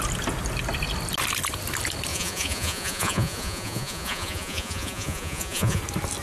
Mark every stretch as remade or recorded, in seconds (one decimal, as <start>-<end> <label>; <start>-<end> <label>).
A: 0.0-2.1 recorded; 2.1-5.8 remade; 5.8-6.2 recorded